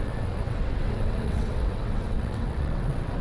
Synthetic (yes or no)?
yes